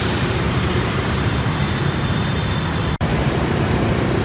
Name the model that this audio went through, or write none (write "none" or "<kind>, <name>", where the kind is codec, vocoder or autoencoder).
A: vocoder, BigVGAN v2